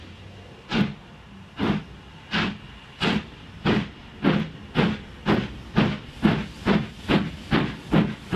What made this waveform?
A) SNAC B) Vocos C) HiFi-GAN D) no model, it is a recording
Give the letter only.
D